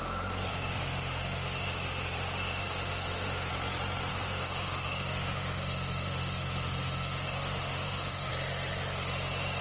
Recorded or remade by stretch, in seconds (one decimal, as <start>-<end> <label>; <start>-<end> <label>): 0.0-0.5 recorded; 0.5-3.5 remade; 3.5-4.1 recorded; 4.1-8.3 remade; 8.3-9.6 recorded